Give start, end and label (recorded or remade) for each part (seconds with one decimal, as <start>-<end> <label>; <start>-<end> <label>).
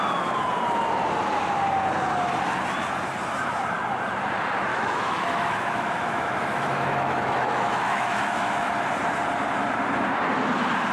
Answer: 0.0-4.7 recorded; 4.7-8.7 remade; 8.7-10.9 recorded